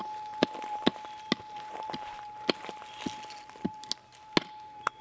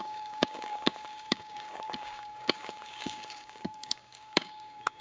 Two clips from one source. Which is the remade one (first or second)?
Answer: second